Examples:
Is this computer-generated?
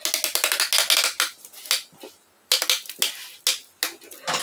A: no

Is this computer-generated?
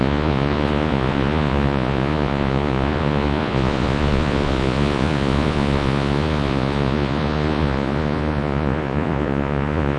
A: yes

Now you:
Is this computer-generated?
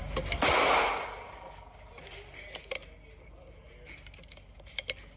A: no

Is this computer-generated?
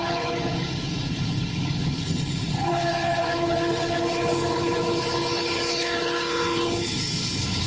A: yes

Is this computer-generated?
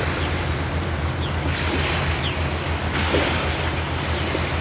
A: no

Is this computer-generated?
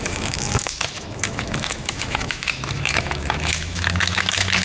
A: yes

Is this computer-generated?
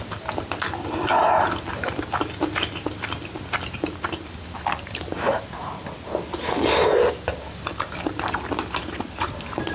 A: no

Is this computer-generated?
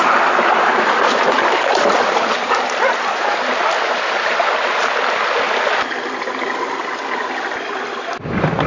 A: no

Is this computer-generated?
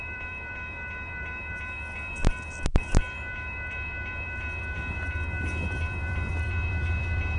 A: yes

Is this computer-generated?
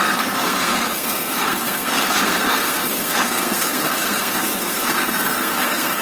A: yes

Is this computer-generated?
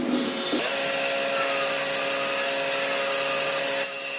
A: no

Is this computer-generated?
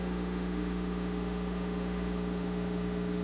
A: yes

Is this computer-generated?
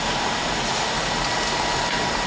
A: yes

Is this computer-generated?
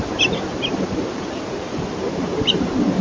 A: yes